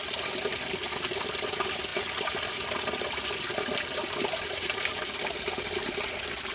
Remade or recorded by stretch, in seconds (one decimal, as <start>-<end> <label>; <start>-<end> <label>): 0.0-6.5 recorded